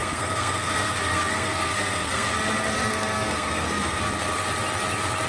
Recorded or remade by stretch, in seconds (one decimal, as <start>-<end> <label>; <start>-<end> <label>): 0.0-2.3 remade; 2.3-2.7 recorded; 2.7-4.0 remade; 4.0-5.3 recorded